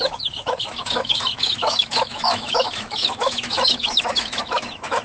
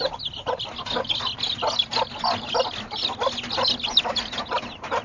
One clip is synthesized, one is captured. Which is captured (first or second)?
second